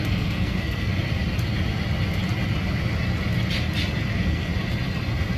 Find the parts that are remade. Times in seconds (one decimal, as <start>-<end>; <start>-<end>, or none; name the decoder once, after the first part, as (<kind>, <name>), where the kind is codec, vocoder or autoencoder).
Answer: 0.0-0.9 (codec, SNAC); 4.1-4.5

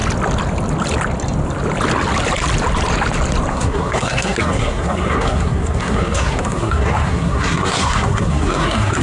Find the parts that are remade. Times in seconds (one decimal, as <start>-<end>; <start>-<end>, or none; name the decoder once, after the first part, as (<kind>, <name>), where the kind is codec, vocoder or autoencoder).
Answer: 3.5-9.0 (codec, SNAC)

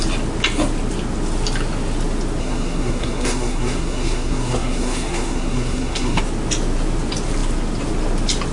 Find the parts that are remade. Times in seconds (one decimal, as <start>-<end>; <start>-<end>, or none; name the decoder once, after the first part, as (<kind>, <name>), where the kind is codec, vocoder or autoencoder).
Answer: 2.4-6.2 (codec, SNAC)

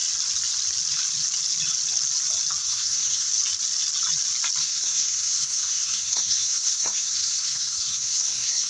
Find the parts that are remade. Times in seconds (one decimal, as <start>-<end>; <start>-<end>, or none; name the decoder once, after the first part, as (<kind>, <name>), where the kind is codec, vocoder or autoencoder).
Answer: 2.6-3.3 (codec, SNAC); 4.6-8.7

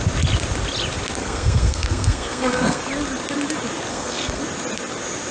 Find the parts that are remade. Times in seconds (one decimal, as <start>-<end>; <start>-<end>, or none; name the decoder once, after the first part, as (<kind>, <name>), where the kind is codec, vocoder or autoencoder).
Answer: 1.2-2.8 (codec, SNAC); 3.9-4.4